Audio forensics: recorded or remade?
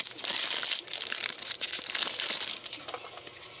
recorded